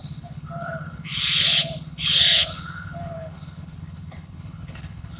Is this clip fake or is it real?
fake